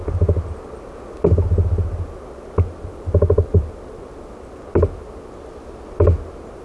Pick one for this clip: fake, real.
real